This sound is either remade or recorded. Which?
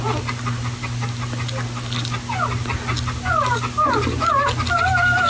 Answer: recorded